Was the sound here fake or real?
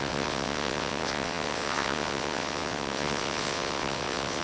fake